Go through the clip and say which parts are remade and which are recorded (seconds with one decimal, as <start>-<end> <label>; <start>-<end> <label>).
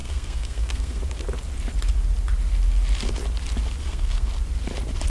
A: 0.0-1.0 remade; 1.0-3.8 recorded; 3.8-4.3 remade; 4.3-5.1 recorded